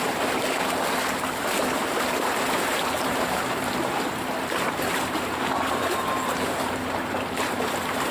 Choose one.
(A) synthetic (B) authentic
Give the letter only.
A